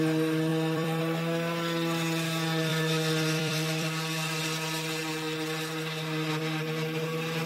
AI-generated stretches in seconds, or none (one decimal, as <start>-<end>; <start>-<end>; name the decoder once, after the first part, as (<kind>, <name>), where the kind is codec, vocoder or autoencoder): 0.5-1.0 (vocoder, BigVGAN v2); 2.7-4.4